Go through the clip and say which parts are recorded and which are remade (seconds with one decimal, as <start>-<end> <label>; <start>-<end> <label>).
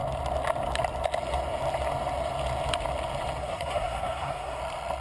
0.0-3.4 recorded; 3.4-4.6 remade; 4.6-5.0 recorded